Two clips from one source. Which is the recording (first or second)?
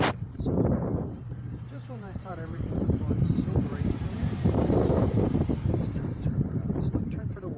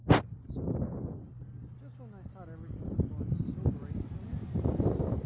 second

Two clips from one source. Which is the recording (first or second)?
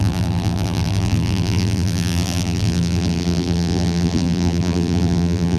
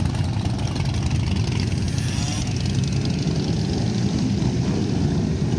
second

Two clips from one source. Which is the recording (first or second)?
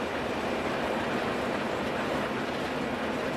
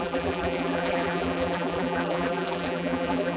first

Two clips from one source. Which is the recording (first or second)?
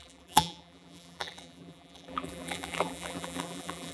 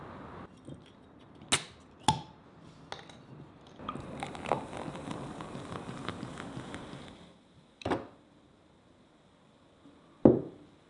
second